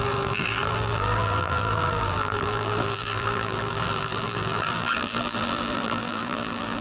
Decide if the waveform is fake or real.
fake